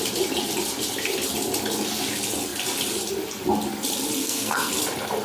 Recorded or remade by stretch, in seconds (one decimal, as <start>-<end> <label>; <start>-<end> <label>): 0.0-4.2 recorded; 4.2-4.7 remade; 4.7-5.2 recorded